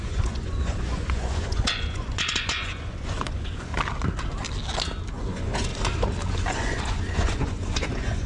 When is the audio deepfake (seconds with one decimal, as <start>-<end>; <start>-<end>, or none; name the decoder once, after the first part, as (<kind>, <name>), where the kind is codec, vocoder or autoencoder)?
0.0-3.7 (vocoder, Vocos); 5.1-5.7; 6.5-8.3